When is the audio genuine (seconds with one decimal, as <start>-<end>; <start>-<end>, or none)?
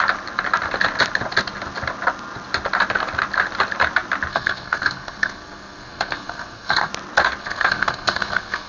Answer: 0.0-4.3; 6.9-7.4